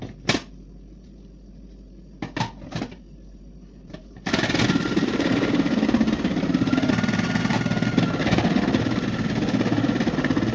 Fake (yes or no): no